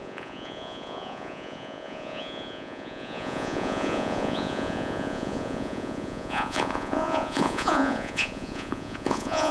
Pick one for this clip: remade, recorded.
remade